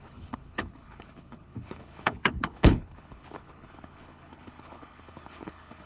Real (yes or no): no